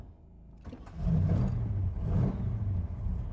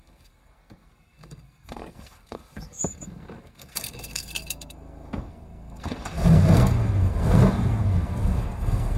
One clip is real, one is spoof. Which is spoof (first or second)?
second